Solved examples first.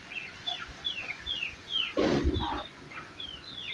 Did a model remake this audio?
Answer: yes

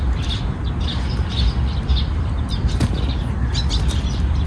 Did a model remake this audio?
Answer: no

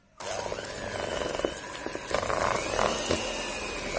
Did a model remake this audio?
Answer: no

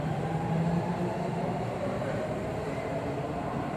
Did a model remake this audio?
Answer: yes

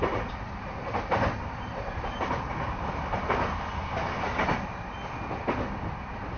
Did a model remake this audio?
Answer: no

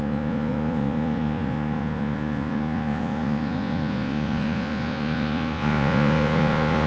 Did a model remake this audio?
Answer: yes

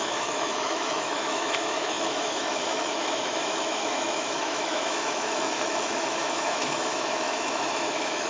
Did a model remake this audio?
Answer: yes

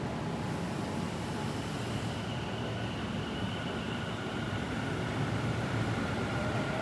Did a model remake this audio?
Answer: no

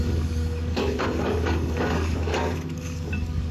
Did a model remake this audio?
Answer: yes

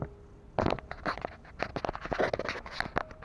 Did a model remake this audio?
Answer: no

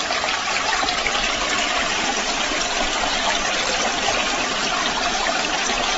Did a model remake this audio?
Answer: no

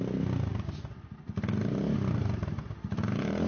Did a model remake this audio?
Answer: no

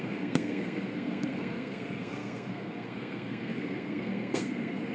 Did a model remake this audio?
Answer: yes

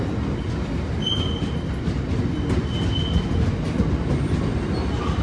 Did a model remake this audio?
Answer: no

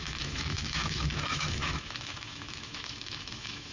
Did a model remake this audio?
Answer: yes